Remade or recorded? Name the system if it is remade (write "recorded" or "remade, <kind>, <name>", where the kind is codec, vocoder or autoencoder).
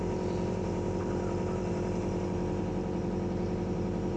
remade, vocoder, BigVGAN v2